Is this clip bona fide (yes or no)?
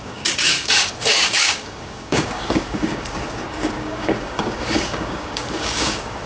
no